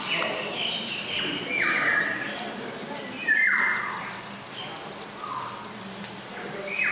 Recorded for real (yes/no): no